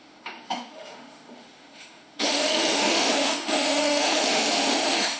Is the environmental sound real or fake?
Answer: fake